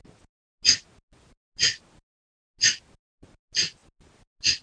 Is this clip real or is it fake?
real